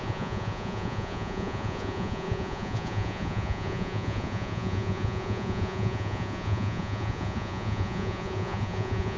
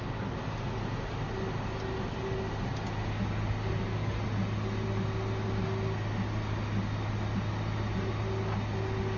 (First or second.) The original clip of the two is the second